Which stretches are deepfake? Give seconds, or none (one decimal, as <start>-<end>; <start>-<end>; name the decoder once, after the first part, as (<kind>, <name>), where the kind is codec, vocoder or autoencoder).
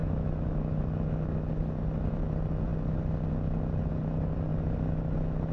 0.0-1.4 (autoencoder, DAC-VAE)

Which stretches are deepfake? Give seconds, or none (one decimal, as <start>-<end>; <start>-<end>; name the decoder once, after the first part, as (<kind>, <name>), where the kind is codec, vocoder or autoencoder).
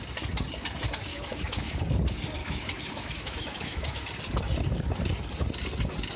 1.1-1.8 (autoencoder, DAC-VAE); 2.4-4.0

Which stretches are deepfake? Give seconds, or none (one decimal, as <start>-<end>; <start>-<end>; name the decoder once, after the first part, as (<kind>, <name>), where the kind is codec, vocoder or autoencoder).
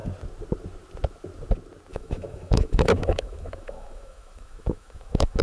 1.9-5.4 (autoencoder, DAC-VAE)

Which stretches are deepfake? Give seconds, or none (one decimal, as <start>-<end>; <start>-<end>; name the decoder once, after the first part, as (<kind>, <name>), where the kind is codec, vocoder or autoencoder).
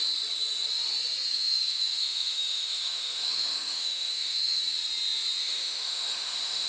1.3-4.6 (autoencoder, DAC-VAE); 5.4-6.7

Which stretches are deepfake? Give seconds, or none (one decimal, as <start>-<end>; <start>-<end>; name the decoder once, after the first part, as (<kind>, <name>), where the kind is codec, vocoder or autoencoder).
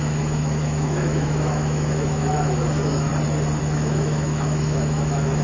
0.0-3.1 (autoencoder, DAC-VAE); 3.6-5.4